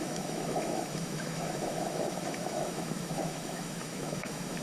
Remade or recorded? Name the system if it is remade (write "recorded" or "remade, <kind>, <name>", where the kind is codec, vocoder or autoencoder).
remade, autoencoder, DAC-VAE